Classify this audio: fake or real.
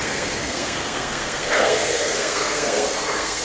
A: fake